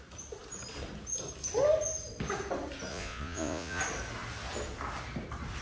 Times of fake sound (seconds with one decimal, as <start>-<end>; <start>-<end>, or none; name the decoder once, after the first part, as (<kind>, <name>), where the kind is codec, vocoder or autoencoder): 2.9-3.8 (vocoder, Vocos)